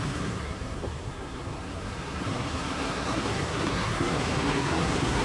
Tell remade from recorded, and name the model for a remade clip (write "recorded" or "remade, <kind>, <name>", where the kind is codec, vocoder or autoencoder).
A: remade, codec, SNAC